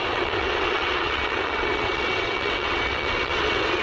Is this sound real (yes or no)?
no